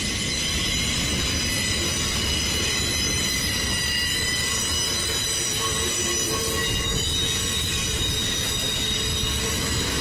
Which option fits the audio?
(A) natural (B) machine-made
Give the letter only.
A